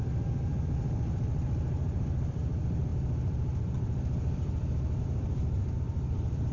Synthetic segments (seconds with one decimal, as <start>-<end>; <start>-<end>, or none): 0.0-6.5